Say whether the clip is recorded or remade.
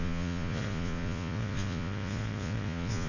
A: remade